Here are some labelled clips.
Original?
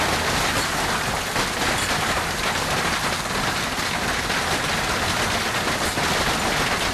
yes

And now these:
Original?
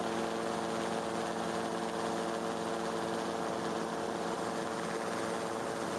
yes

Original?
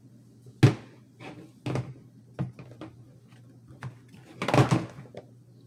yes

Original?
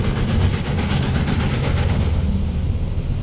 yes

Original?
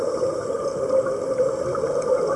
yes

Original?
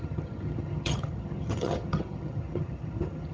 no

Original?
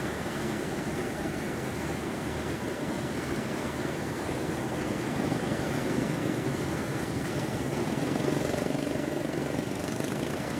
no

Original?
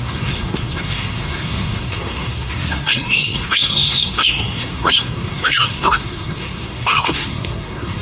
no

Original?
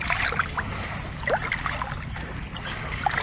yes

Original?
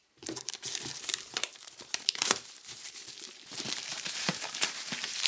no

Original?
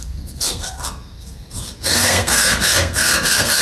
no